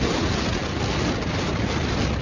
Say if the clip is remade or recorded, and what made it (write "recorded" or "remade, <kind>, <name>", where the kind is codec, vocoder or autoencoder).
recorded